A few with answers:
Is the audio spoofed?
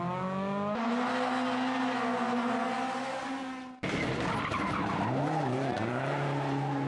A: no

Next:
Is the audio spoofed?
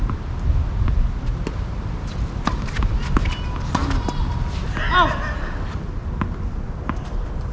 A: no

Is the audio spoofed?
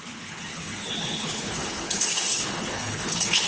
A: yes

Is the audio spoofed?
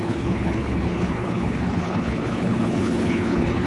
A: yes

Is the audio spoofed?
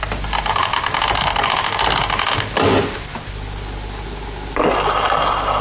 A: no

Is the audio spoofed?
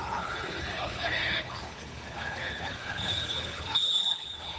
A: yes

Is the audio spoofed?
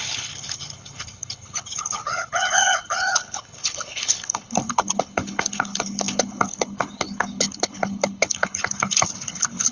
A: yes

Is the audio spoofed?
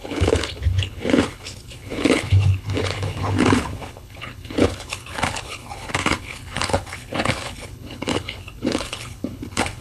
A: yes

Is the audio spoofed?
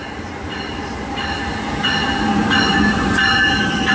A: no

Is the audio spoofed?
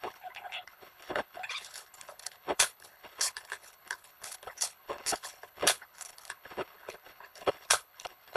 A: yes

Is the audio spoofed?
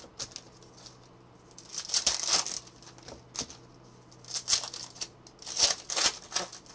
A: no